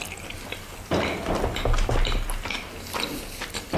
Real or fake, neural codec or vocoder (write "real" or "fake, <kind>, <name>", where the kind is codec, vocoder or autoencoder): real